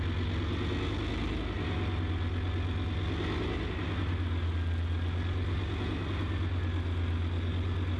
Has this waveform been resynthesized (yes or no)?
no